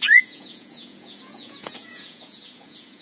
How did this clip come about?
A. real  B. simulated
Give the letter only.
B